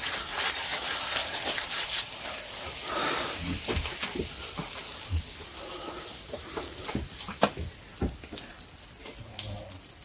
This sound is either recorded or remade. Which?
recorded